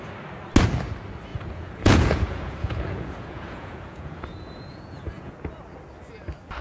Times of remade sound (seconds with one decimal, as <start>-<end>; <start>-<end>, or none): 1.3-5.3